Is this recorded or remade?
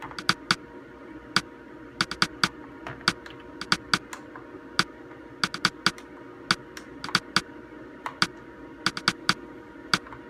recorded